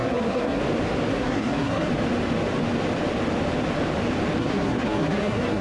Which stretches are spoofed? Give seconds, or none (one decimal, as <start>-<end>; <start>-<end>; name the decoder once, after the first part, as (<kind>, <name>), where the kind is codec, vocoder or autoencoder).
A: 0.0-0.6 (codec, SNAC); 1.1-1.9; 4.4-5.6